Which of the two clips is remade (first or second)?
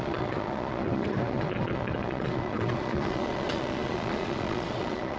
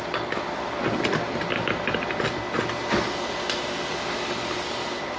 first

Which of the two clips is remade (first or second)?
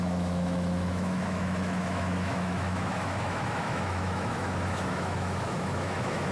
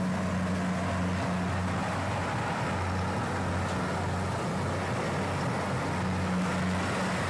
first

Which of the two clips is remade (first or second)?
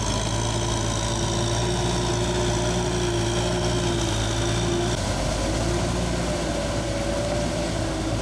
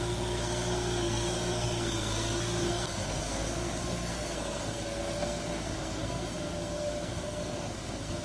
second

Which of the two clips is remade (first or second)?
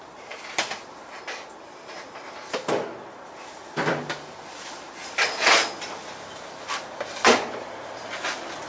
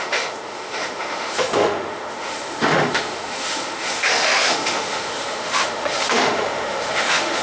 second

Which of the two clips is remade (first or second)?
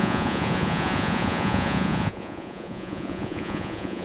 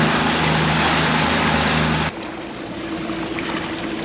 first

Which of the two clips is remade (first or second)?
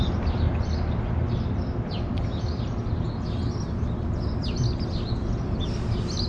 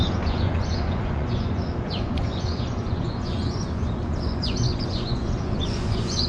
second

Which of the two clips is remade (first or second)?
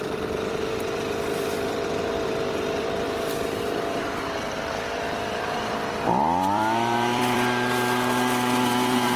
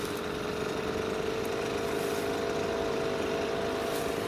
first